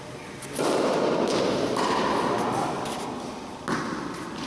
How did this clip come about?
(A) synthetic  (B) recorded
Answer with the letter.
B